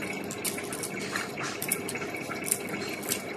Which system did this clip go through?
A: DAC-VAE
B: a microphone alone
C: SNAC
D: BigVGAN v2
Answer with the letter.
B